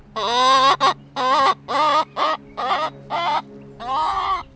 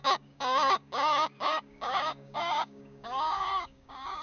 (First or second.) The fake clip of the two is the second